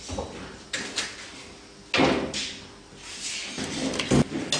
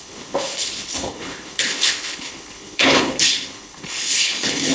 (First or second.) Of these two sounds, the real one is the first